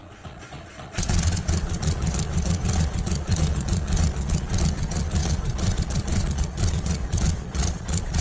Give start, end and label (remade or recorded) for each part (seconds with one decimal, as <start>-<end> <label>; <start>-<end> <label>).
0.0-8.2 remade